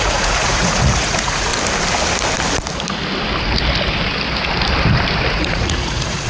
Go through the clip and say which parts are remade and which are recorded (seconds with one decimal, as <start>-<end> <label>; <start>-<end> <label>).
0.0-1.5 remade; 1.5-5.3 recorded; 5.3-6.3 remade